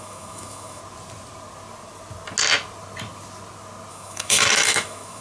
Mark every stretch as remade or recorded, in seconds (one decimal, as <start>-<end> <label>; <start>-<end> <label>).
0.0-0.8 remade; 0.8-3.9 recorded; 3.9-5.2 remade